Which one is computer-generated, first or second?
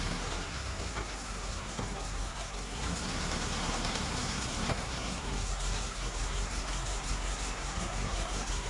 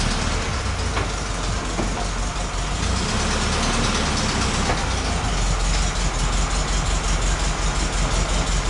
first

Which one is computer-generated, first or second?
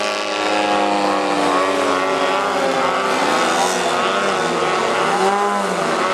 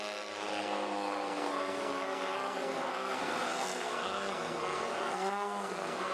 second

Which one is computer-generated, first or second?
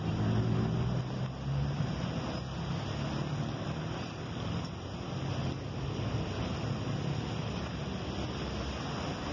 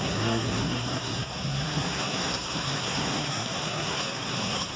second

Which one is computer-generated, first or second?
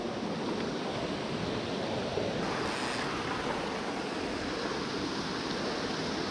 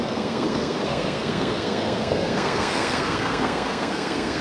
second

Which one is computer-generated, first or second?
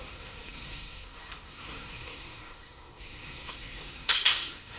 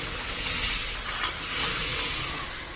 first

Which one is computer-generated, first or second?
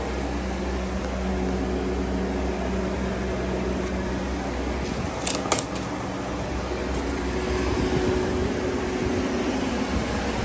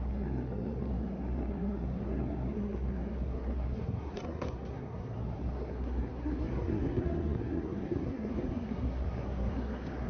second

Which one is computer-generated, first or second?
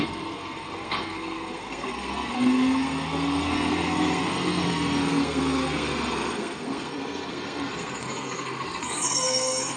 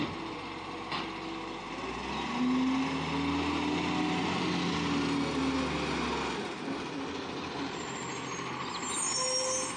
first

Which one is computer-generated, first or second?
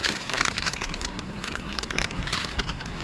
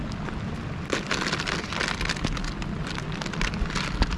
first